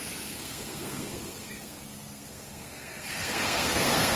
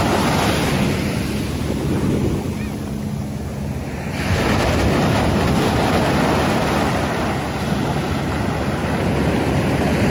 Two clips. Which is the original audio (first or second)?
second